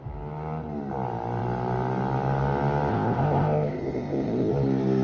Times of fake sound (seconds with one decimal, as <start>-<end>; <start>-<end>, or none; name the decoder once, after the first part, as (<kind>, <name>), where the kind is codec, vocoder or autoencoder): 2.9-4.5 (codec, ZipCodec)